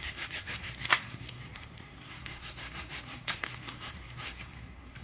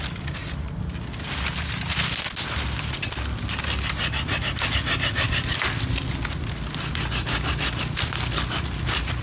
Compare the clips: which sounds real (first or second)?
second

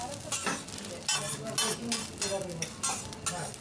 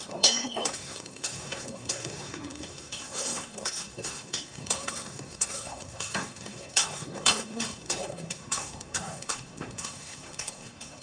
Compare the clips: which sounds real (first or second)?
first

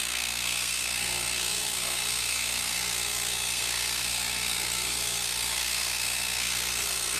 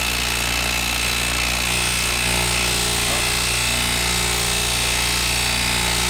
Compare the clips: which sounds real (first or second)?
second